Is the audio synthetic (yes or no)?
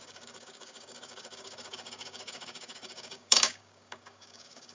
yes